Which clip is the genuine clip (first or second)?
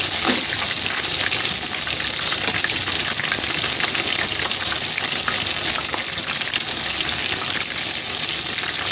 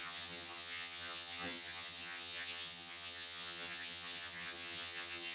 first